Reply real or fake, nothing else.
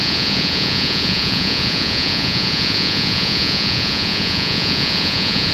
fake